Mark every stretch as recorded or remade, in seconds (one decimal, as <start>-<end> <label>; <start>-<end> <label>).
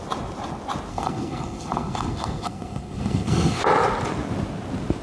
0.0-0.9 recorded; 0.9-3.6 remade; 3.6-5.0 recorded